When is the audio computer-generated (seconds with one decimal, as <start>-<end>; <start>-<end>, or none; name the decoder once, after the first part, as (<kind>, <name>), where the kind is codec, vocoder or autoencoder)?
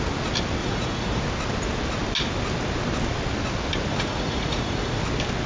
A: 0.6-1.2 (vocoder, Vocos); 3.9-5.0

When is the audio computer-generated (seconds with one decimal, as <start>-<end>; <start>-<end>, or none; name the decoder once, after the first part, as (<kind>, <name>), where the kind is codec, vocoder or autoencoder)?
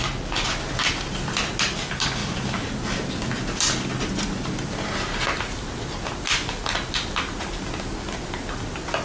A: none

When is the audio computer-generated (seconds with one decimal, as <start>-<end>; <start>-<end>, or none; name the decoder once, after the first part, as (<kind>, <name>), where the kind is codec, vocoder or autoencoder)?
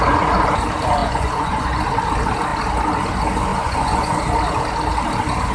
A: 1.0-1.9 (vocoder, Vocos); 3.5-4.2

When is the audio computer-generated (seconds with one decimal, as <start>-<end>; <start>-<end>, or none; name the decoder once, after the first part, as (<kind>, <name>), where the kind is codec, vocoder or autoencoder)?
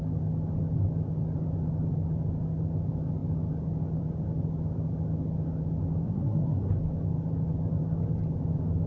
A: 6.0-6.7 (codec, SNAC)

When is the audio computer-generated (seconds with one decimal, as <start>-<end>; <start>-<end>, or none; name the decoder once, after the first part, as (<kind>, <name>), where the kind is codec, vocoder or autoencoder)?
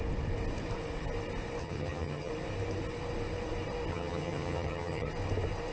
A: 1.6-2.3 (vocoder, HiFi-GAN); 3.9-5.1